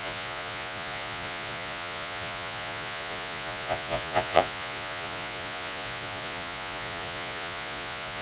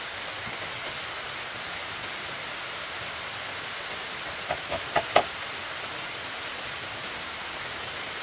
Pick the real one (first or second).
second